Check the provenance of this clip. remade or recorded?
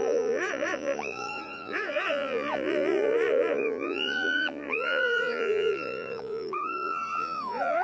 remade